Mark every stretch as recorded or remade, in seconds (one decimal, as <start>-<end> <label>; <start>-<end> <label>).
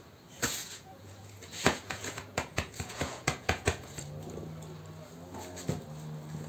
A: 0.0-0.6 recorded; 0.6-4.0 remade; 4.0-6.5 recorded